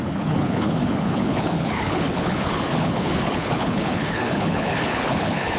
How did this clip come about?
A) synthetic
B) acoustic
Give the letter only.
A